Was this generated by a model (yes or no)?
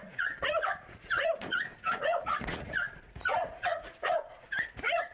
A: yes